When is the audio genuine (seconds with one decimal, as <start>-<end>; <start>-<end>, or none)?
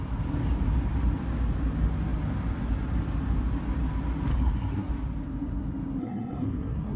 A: 0.0-4.3; 4.9-6.0